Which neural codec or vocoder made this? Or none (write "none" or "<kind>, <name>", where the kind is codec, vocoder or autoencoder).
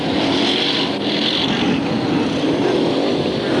none